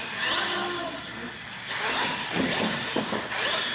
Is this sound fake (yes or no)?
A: no